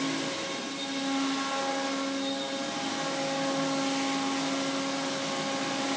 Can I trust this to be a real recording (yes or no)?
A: yes